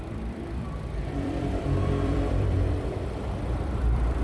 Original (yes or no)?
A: no